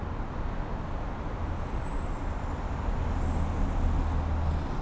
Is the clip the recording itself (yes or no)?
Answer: yes